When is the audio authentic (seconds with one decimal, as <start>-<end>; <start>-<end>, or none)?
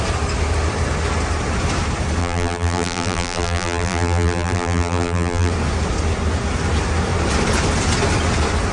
0.0-2.2; 5.5-8.7